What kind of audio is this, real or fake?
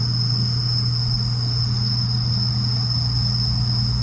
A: real